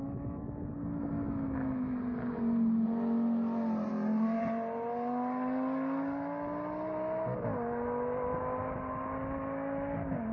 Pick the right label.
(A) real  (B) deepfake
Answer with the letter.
A